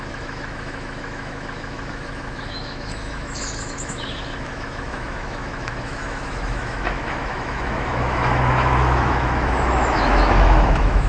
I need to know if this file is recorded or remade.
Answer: remade